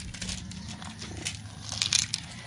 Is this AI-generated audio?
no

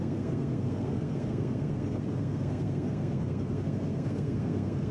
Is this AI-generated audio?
yes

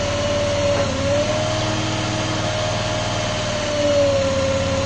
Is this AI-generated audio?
no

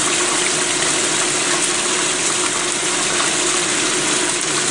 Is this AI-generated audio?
no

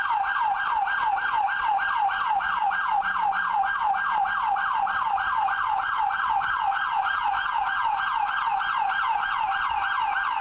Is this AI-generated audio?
no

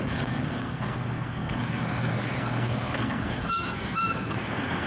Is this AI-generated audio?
yes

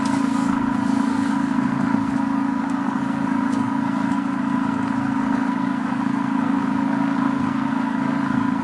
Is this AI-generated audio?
yes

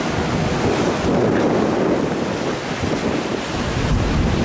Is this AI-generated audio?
no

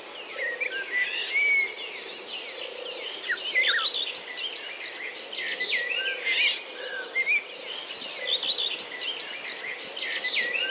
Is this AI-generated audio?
no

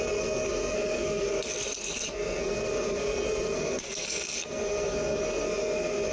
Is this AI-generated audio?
yes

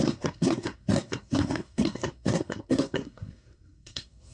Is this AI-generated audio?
yes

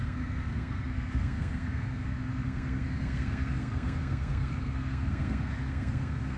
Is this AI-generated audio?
yes